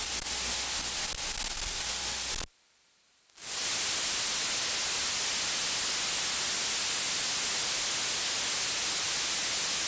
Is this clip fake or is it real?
real